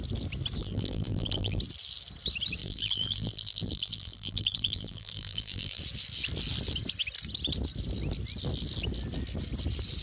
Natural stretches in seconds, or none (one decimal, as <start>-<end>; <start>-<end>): 0.0-0.6; 1.6-2.6; 5.8-10.0